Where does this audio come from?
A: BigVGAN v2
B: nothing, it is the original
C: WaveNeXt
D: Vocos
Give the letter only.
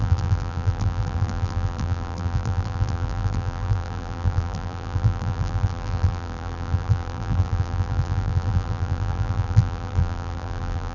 A